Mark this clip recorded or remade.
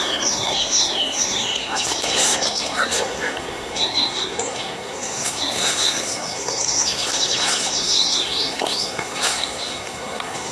remade